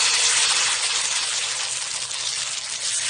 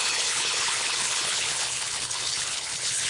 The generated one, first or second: second